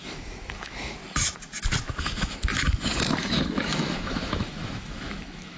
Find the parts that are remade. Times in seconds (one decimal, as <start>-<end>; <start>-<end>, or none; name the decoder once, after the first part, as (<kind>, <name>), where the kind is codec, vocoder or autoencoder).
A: 0.0-1.0 (autoencoder, DAC-VAE); 2.0-5.6